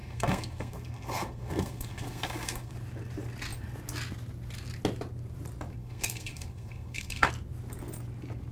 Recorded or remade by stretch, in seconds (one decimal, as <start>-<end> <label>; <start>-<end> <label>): 0.0-2.7 remade; 2.7-5.8 recorded; 5.8-7.3 remade; 7.3-8.5 recorded